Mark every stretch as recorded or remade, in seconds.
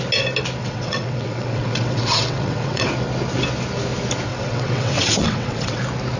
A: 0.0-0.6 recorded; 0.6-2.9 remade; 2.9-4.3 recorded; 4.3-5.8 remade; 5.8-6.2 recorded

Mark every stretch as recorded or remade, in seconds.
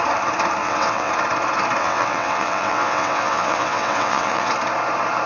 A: 0.0-0.6 recorded; 0.6-1.1 remade; 1.1-1.8 recorded; 1.8-4.5 remade; 4.5-5.3 recorded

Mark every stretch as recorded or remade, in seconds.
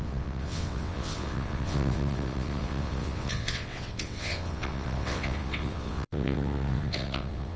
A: 0.0-7.6 remade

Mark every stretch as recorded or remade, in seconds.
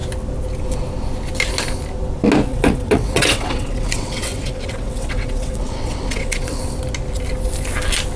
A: 0.0-2.5 recorded; 2.5-6.6 remade; 6.6-8.2 recorded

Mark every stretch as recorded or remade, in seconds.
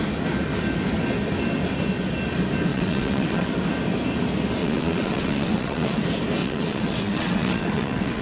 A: 0.0-2.7 recorded; 2.7-3.5 remade; 3.5-4.6 recorded; 4.6-6.0 remade; 6.0-6.4 recorded; 6.4-8.2 remade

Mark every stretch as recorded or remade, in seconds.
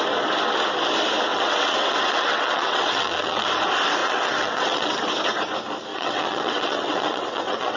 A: 0.0-1.3 recorded; 1.3-3.5 remade; 3.5-4.0 recorded; 4.0-5.0 remade; 5.0-5.9 recorded; 5.9-7.8 remade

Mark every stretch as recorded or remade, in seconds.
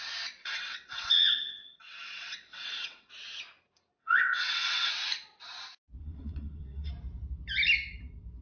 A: 0.0-0.4 recorded; 0.4-3.1 remade; 3.1-4.0 recorded; 4.0-4.9 remade; 4.9-6.0 recorded; 6.0-6.9 remade; 6.9-8.4 recorded